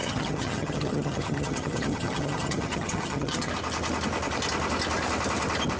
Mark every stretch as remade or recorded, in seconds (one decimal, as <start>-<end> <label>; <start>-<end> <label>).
0.0-3.5 remade; 3.5-5.8 recorded